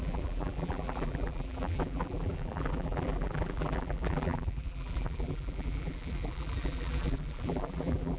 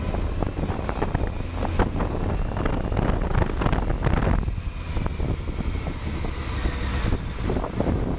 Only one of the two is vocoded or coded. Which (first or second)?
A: first